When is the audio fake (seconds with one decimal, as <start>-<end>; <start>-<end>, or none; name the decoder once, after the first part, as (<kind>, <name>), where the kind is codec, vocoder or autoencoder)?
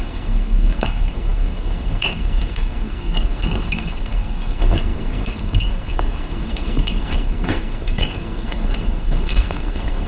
0.0-10.1 (codec, SNAC)